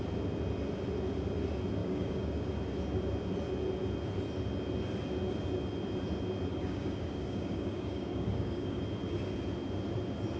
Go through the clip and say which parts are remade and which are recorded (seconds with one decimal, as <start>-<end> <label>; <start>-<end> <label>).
0.0-1.8 recorded; 1.8-2.5 remade; 2.5-6.5 recorded; 6.5-8.8 remade; 8.8-10.4 recorded